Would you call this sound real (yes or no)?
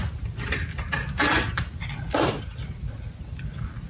yes